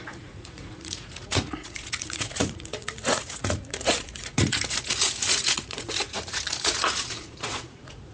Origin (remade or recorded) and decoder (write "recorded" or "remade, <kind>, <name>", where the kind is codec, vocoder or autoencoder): remade, vocoder, Vocos